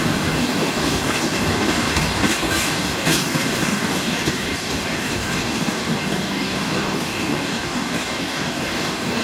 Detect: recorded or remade remade